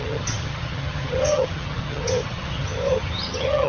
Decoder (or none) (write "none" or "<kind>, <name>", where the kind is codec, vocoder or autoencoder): vocoder, HiFi-GAN